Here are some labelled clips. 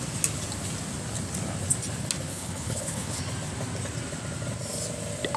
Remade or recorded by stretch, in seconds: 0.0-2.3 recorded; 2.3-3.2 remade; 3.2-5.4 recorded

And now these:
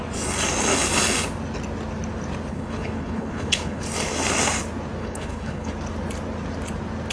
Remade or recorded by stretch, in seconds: 0.0-2.5 recorded; 2.5-3.8 remade; 3.8-5.0 recorded; 5.0-5.7 remade; 5.7-7.1 recorded

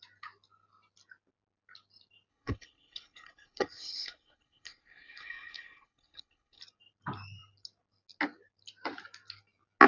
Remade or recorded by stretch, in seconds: 0.0-2.3 recorded; 2.3-6.6 remade; 6.6-9.9 recorded

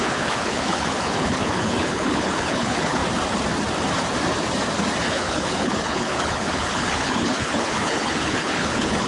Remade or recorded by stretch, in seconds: 0.0-3.0 remade; 3.0-5.1 recorded; 5.1-9.1 remade

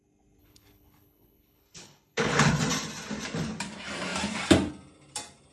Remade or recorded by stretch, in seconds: 0.0-0.4 recorded; 0.4-2.5 remade; 2.5-5.5 recorded

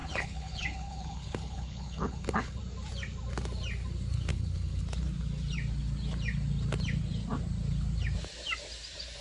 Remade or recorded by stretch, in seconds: 0.0-2.6 remade; 2.6-4.3 recorded; 4.3-4.8 remade; 4.8-9.2 recorded

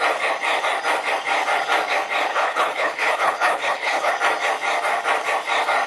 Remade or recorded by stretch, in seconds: 0.0-2.3 recorded; 2.3-4.1 remade; 4.1-5.9 recorded

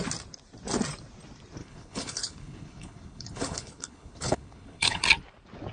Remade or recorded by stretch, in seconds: 0.0-1.6 recorded; 1.6-5.0 remade; 5.0-5.7 recorded